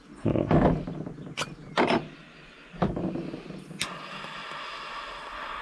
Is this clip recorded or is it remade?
recorded